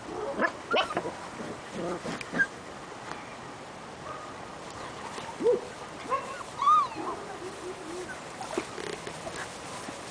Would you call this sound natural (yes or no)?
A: yes